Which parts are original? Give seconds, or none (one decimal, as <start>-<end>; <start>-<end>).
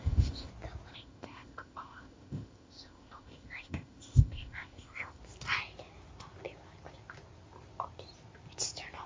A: 0.5-0.9; 5.2-9.1